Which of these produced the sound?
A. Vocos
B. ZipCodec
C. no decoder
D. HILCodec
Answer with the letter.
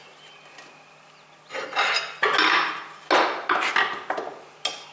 C